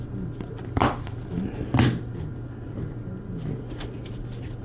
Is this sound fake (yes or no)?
no